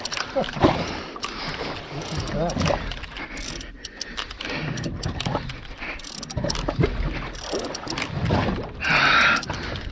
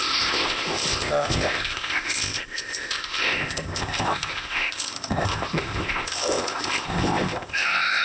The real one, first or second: first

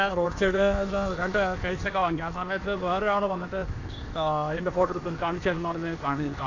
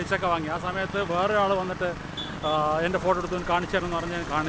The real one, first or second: second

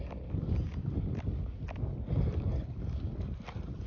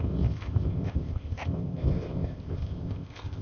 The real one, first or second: first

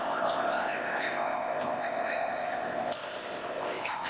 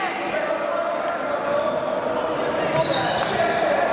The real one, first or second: second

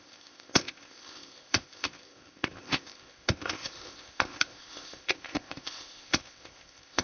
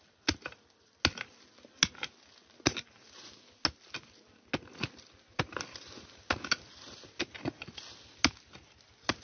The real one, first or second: second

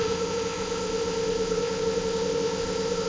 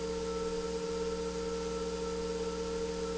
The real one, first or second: second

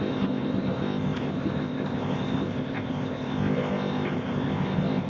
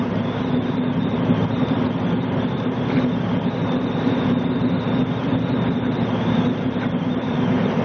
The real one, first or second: second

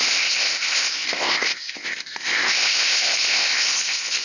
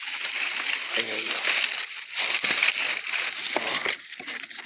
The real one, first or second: second